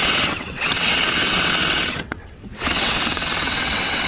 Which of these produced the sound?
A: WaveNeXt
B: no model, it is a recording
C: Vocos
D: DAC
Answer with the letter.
A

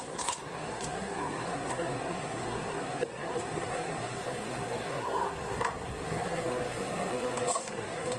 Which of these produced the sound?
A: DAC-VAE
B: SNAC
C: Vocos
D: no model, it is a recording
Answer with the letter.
B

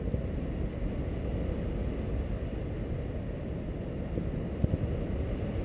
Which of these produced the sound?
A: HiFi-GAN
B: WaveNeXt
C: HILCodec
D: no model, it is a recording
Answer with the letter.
D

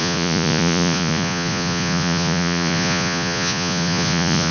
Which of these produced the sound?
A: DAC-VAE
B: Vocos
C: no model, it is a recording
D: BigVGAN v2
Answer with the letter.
B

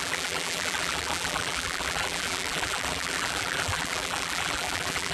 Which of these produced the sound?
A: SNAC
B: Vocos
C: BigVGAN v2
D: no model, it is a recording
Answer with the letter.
C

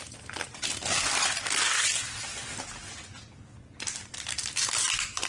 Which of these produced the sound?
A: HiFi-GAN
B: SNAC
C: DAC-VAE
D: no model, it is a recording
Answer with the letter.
D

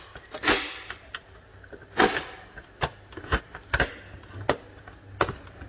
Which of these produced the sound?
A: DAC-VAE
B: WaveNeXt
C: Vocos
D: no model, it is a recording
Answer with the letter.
D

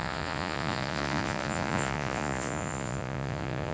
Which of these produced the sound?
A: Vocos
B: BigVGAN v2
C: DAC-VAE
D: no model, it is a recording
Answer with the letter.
A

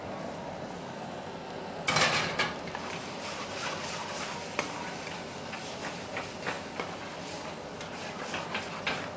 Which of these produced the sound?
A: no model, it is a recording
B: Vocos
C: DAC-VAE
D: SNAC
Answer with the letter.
A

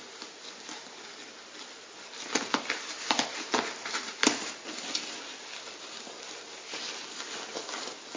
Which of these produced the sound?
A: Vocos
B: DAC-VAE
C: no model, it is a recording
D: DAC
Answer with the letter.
C